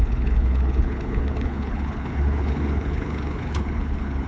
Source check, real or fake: fake